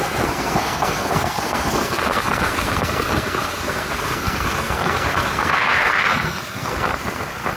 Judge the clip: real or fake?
fake